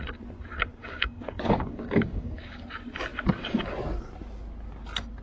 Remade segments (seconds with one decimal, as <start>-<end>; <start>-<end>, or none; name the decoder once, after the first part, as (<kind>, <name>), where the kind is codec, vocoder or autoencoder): 0.8-2.6 (codec, DAC)